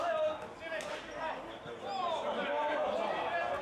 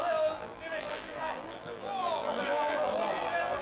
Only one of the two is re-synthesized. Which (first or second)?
second